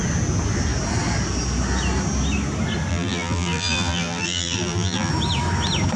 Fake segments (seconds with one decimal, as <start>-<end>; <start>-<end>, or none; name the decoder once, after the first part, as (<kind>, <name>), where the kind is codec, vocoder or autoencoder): 2.9-5.1 (vocoder, BigVGAN v2)